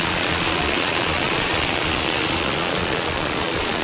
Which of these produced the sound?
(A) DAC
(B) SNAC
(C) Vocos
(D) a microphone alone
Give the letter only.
C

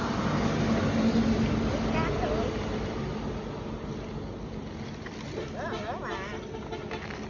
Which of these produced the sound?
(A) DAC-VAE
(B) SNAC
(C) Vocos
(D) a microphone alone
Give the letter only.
D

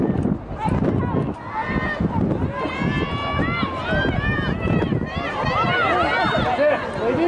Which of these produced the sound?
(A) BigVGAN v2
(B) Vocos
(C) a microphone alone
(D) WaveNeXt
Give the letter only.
C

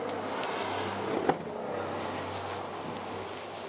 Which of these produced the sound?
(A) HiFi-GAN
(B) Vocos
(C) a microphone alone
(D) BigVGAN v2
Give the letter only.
C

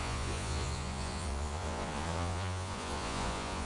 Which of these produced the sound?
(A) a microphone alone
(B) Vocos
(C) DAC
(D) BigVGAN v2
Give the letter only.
B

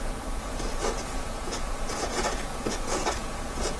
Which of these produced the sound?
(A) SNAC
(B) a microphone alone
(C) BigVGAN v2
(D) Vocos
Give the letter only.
D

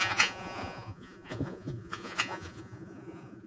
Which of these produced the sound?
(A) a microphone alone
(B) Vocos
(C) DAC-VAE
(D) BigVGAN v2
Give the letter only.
B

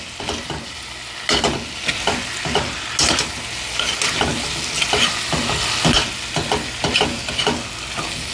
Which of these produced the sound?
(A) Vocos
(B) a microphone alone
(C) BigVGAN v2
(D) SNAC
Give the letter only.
B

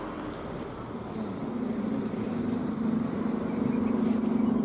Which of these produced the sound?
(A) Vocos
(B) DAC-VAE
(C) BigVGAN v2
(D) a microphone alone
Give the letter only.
D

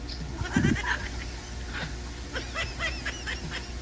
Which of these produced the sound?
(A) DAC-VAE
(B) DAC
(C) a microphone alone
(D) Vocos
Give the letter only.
C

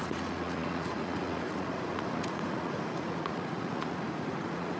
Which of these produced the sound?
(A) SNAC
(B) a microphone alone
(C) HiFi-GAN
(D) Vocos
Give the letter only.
D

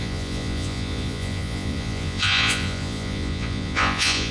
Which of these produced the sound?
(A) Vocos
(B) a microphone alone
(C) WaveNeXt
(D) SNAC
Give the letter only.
A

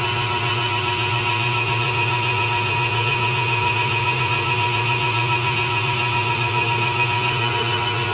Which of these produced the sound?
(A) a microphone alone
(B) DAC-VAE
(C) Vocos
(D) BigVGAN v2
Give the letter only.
C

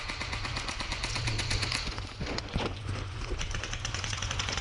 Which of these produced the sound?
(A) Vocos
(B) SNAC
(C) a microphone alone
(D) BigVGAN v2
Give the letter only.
A